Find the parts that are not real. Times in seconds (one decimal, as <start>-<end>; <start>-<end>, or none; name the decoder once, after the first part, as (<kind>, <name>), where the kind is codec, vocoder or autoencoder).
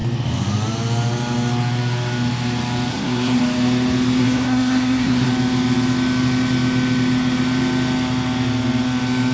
2.9-3.4 (codec, SNAC); 4.2-5.3